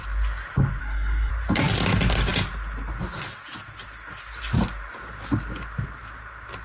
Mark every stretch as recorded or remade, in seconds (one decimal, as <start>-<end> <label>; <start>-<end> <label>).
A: 0.0-0.8 recorded; 0.8-1.3 remade; 1.3-6.6 recorded